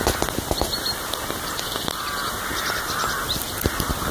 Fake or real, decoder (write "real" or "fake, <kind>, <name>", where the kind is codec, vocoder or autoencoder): real